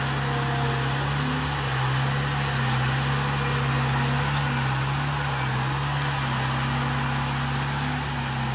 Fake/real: real